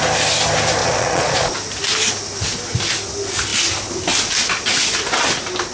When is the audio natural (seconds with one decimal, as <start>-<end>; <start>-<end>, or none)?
0.0-0.8; 1.5-5.7